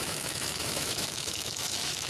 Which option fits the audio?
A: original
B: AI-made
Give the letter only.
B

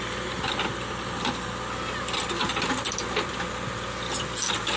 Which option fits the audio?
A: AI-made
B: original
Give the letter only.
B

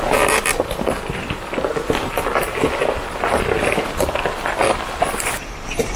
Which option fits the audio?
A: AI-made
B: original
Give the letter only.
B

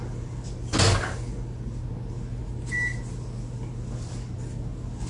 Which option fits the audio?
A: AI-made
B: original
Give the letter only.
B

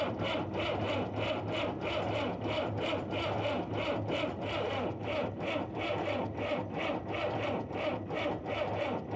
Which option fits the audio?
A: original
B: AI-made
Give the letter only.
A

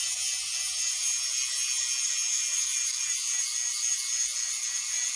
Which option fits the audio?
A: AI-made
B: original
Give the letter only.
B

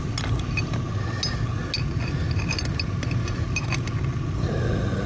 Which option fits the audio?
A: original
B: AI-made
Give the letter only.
A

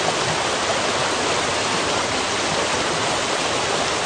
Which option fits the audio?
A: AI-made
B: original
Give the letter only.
B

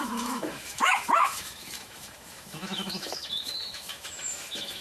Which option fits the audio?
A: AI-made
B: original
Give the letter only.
A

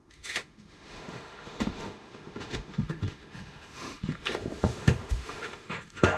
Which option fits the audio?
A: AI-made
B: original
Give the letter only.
A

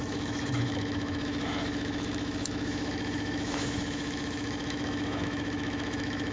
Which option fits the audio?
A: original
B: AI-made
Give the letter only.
B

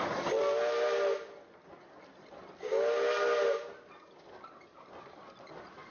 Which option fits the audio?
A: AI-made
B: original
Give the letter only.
B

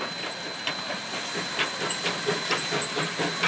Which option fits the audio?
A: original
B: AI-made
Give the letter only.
A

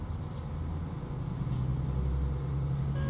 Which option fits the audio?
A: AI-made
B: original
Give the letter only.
B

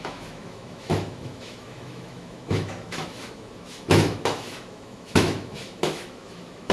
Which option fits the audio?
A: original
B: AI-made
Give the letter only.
B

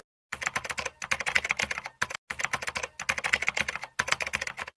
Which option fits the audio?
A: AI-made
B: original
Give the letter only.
B